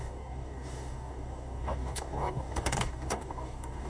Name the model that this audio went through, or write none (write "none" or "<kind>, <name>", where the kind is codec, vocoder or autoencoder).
codec, DAC